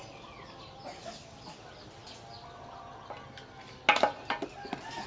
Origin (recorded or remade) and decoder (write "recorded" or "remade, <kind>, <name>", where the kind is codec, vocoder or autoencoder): recorded